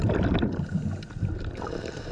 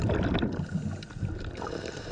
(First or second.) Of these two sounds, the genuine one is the second